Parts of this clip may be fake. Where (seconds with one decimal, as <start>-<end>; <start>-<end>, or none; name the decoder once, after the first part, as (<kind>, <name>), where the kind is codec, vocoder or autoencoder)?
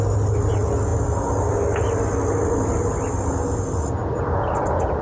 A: none